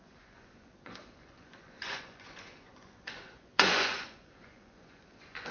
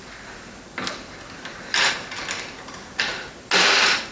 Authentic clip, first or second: second